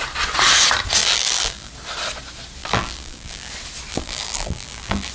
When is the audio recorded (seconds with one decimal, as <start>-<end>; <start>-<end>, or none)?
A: 0.0-1.0; 1.7-2.6; 3.5-3.9